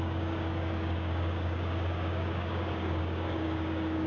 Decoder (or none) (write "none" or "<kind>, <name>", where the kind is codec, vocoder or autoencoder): codec, DAC